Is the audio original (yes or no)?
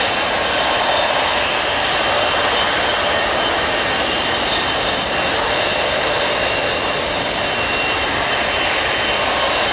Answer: yes